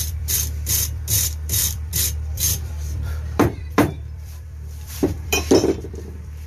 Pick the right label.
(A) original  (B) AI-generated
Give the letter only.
B